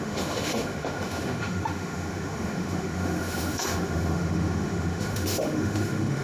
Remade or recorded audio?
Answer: remade